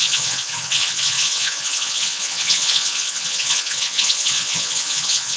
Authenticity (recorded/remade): remade